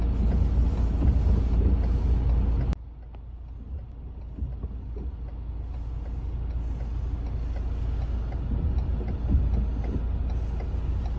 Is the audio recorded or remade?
recorded